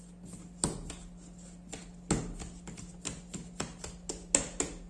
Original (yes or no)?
yes